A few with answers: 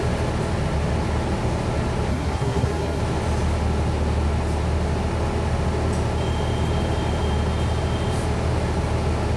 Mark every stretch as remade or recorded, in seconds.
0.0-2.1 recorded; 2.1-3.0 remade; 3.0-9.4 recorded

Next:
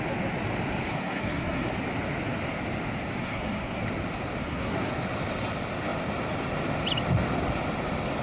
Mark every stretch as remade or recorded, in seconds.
0.0-0.9 recorded; 0.9-1.7 remade; 1.7-3.2 recorded; 3.2-3.8 remade; 3.8-4.4 recorded; 4.4-4.9 remade; 4.9-8.2 recorded

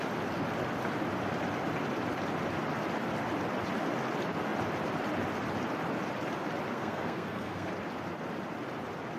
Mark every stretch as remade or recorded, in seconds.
0.0-6.7 recorded; 6.7-7.7 remade; 7.7-9.2 recorded

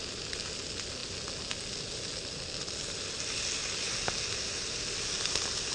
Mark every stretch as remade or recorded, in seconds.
0.0-5.7 recorded

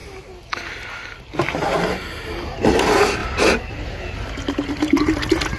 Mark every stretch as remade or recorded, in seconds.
0.0-5.6 recorded